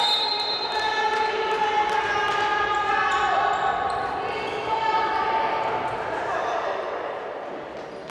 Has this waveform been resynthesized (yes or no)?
no